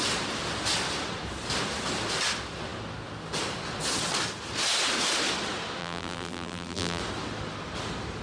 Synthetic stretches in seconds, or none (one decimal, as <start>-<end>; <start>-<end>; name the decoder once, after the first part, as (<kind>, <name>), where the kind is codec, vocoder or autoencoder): 5.8-7.0 (vocoder, BigVGAN v2)